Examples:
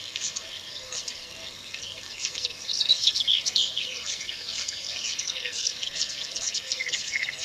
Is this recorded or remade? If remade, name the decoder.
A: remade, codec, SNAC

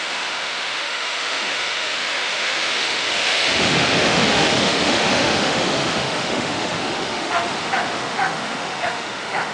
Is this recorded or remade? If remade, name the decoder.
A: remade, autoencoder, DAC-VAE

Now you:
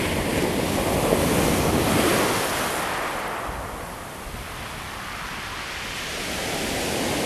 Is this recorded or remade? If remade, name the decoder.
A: recorded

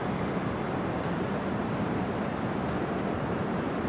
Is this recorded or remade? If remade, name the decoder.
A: recorded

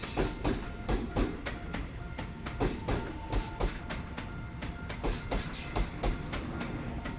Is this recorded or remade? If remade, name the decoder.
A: recorded